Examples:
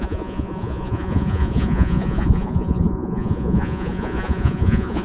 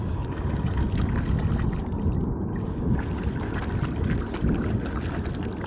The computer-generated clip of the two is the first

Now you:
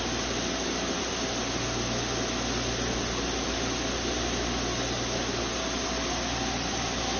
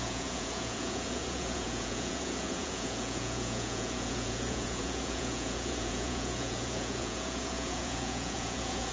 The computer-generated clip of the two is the second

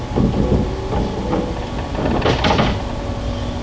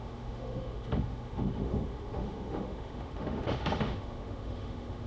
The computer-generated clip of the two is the second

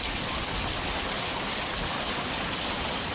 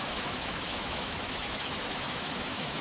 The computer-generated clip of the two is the second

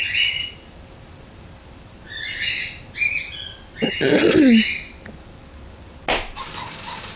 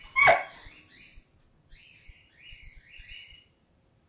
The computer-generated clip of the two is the second